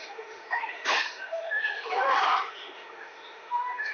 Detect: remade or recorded remade